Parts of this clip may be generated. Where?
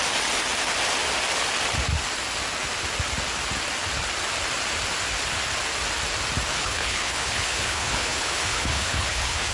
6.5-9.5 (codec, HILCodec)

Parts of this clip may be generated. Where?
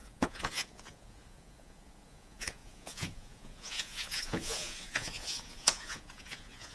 0.0-6.7 (vocoder, Vocos)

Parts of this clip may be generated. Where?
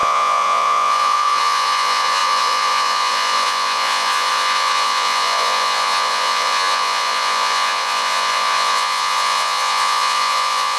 0.0-10.8 (vocoder, Vocos)